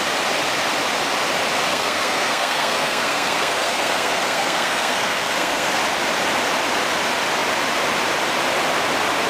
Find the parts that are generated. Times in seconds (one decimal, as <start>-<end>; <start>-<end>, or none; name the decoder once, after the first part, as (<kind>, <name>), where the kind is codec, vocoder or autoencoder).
1.7-5.8 (codec, SNAC)